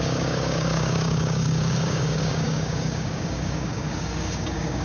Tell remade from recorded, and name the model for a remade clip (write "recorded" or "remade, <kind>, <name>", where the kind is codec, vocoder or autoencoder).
remade, codec, DAC